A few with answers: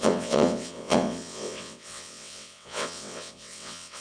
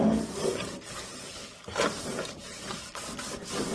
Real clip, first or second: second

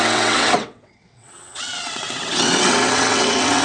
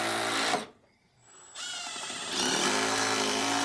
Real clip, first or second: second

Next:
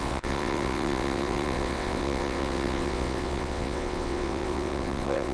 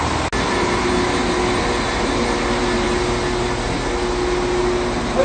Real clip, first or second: second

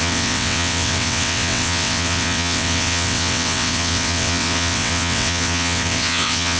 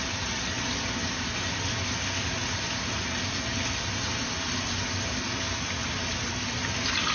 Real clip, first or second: second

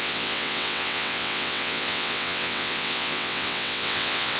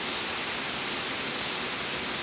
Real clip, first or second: second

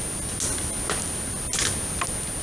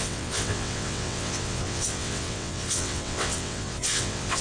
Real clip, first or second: first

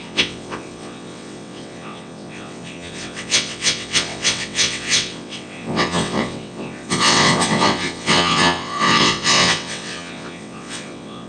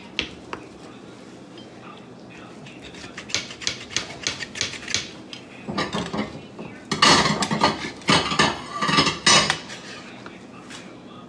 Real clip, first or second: second